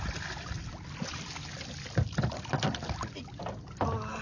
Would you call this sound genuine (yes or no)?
yes